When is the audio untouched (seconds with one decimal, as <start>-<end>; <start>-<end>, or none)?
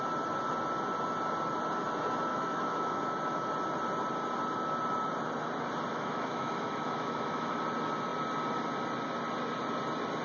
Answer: 0.0-2.3; 3.5-5.9; 7.6-10.2